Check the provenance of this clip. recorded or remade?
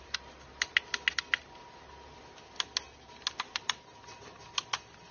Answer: recorded